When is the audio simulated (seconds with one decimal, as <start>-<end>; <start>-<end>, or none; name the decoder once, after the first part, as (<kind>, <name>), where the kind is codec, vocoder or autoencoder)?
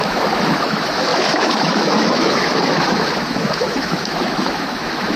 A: 0.0-5.2 (autoencoder, DAC-VAE)